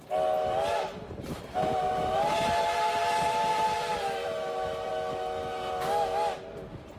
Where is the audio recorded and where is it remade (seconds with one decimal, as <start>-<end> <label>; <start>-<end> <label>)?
0.0-0.7 recorded; 0.7-4.9 remade; 4.9-7.0 recorded